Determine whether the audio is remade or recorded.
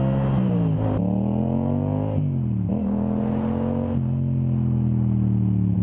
recorded